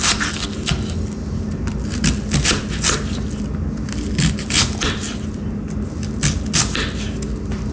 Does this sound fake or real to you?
real